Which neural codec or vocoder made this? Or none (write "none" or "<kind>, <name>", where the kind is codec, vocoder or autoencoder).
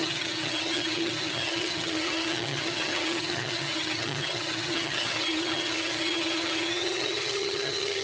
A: vocoder, HiFi-GAN